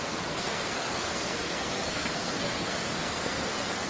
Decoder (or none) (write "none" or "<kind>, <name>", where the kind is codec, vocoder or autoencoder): codec, SNAC